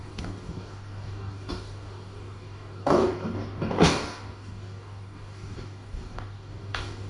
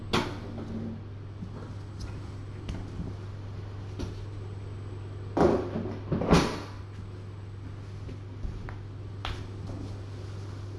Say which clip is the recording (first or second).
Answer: second